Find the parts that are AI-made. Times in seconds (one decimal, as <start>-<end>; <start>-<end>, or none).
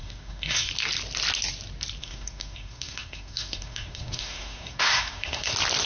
0.0-0.7; 2.0-5.5